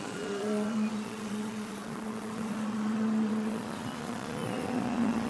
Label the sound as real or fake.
fake